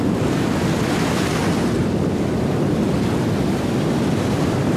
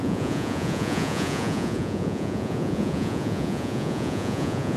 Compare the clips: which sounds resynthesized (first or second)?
second